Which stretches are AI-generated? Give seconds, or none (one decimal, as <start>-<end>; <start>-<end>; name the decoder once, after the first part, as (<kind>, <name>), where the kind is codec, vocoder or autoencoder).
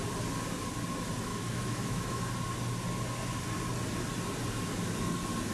1.3-2.2 (autoencoder, DAC-VAE)